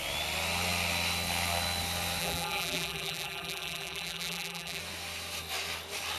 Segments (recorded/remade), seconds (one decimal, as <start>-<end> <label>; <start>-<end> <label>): 0.0-2.2 recorded; 2.2-4.8 remade; 4.8-6.2 recorded